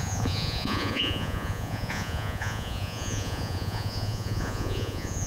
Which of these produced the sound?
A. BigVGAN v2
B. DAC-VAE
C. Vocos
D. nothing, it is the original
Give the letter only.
C